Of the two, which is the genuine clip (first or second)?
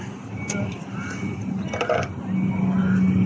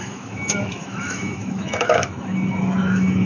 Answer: first